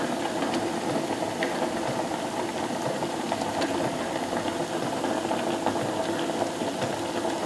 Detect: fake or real real